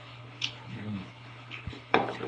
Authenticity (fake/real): fake